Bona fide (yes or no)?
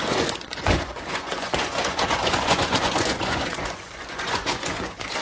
no